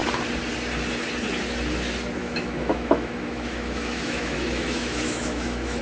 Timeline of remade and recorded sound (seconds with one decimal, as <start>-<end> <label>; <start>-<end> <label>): 0.0-2.2 recorded; 2.2-5.8 remade